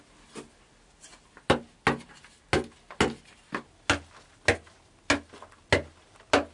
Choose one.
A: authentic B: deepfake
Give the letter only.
A